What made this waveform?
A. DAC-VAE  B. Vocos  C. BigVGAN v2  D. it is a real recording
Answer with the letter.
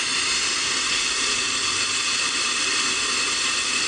C